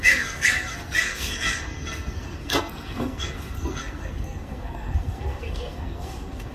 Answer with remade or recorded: remade